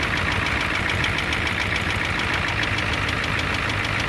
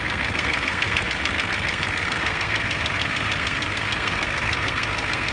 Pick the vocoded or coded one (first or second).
second